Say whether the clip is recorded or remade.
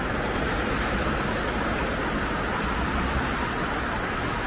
recorded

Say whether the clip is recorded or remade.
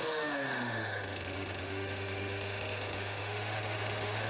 remade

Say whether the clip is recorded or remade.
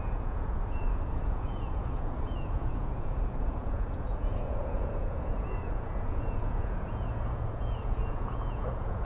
remade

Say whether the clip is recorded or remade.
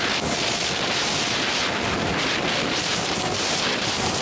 remade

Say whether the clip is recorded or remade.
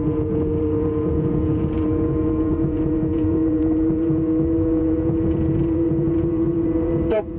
remade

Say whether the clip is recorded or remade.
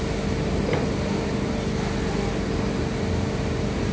recorded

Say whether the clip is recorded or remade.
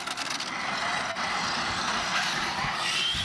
recorded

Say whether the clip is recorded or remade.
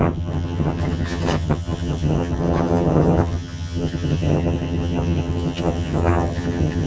remade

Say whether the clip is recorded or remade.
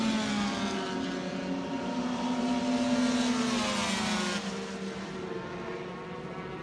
recorded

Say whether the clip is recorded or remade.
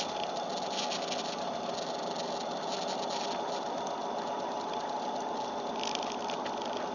recorded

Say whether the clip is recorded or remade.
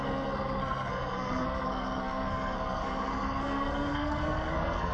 remade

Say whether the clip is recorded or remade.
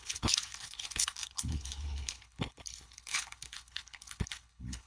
remade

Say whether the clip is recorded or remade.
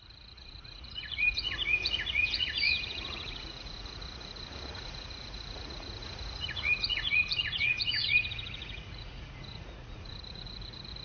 remade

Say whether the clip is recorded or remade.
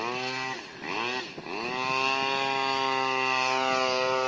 recorded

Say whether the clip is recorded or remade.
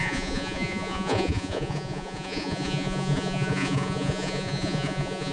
remade